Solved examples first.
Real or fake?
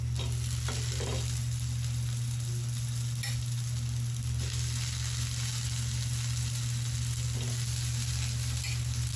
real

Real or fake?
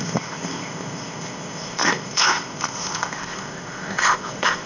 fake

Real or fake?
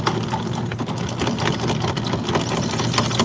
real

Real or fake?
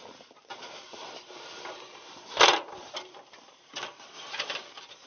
fake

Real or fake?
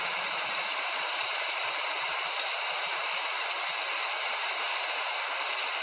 fake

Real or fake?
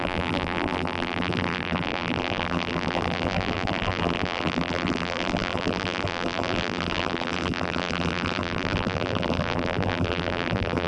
fake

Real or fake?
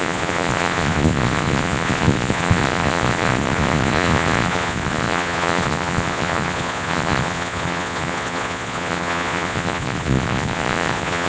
fake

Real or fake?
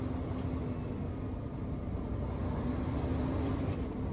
real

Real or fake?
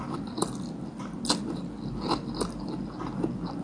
real